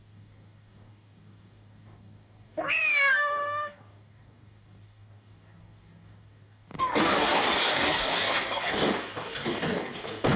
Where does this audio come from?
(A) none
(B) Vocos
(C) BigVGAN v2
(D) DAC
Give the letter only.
D